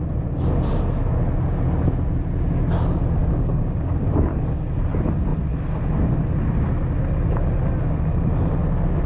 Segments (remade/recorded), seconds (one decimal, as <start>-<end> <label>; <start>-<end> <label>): 0.0-3.2 recorded; 3.2-3.9 remade; 3.9-9.1 recorded

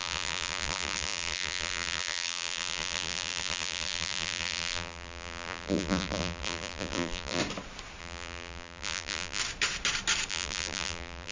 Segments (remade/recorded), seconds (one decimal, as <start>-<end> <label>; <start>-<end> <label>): 0.0-7.4 remade; 7.4-8.0 recorded; 8.0-9.4 remade; 9.4-10.3 recorded; 10.3-11.3 remade

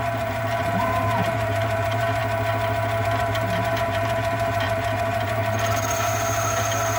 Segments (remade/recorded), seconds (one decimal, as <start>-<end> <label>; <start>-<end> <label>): 0.0-2.2 remade; 2.2-3.0 recorded; 3.0-5.4 remade; 5.4-7.0 recorded

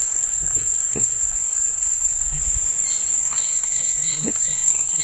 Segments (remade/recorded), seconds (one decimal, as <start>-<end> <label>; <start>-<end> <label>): 0.0-2.4 remade; 2.4-3.2 recorded; 3.2-5.0 remade